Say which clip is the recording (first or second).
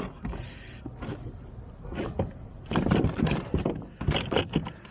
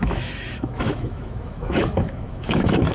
first